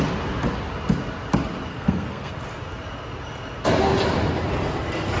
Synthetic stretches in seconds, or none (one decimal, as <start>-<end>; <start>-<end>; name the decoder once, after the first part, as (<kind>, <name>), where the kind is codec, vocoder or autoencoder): 1.7-2.3 (codec, SNAC)